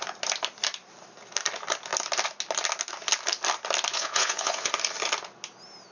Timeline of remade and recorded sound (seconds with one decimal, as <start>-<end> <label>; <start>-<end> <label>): 0.0-3.9 recorded; 3.9-4.7 remade; 4.7-5.9 recorded